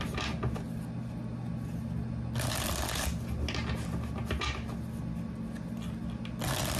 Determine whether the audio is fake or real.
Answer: real